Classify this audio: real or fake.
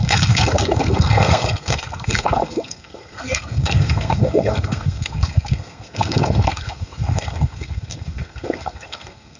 fake